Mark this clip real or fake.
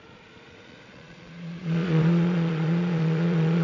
fake